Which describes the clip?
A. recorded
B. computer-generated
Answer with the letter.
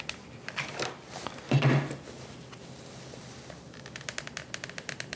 B